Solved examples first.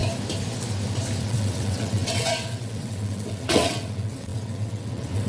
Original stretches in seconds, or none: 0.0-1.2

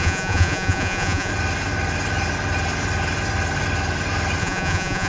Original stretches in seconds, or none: 1.3-4.4

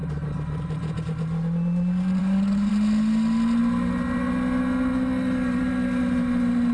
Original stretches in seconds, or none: 0.0-2.2; 2.7-6.7

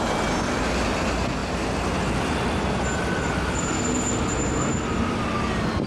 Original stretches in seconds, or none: 0.0-5.9

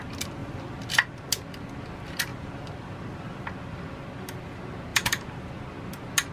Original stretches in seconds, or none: 0.0-0.4; 1.3-2.3; 3.4-4.9; 5.5-6.3

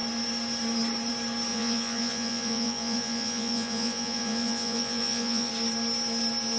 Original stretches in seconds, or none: 0.0-1.5; 5.5-6.6

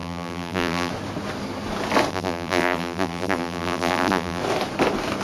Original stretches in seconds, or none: 0.9-2.1; 4.4-5.2

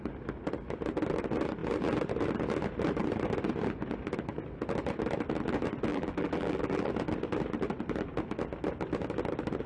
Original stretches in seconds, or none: 0.0-5.9; 6.9-9.7